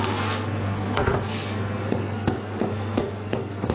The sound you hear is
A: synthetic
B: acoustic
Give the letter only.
A